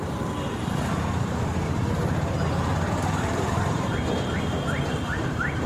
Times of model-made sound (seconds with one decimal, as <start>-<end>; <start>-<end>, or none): 0.0-2.0; 2.9-5.7